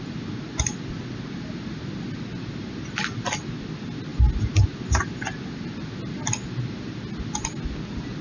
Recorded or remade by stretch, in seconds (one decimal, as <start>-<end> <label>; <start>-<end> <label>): 0.0-8.2 recorded